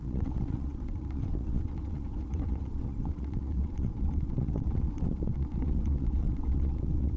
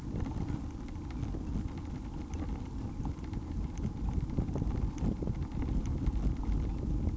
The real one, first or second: second